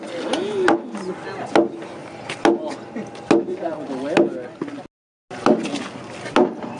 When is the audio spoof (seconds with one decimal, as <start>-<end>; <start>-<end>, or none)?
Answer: none